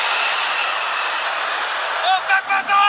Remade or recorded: recorded